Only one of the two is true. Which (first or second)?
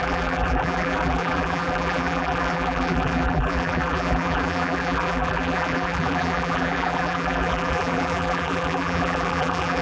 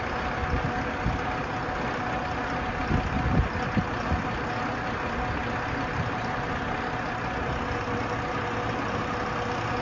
second